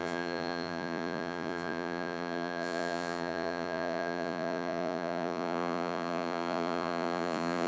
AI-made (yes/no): yes